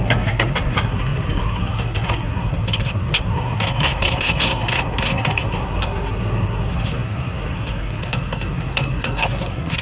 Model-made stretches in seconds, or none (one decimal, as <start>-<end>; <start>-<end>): 0.0-9.8